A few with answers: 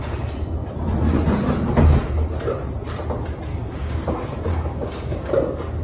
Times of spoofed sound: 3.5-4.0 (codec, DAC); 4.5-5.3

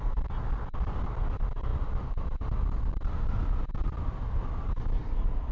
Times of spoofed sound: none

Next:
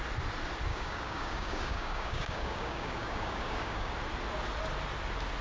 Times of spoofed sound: 0.7-3.9 (codec, DAC)